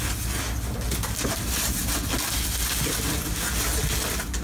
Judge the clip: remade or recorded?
recorded